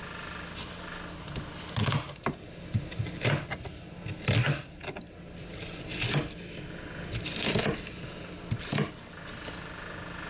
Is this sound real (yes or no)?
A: yes